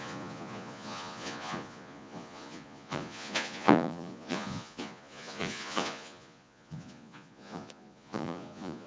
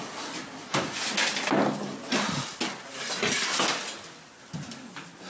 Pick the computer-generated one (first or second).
first